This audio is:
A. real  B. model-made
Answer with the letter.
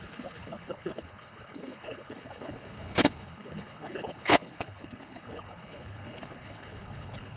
B